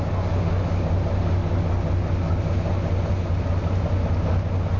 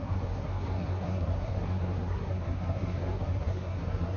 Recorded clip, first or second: first